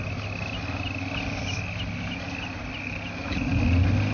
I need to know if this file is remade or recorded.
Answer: recorded